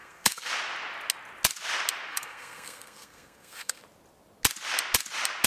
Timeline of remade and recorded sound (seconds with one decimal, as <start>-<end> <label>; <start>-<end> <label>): 0.0-0.5 remade; 0.5-2.1 recorded; 2.1-3.8 remade; 3.8-5.5 recorded